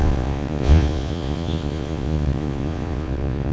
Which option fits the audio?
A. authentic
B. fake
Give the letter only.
B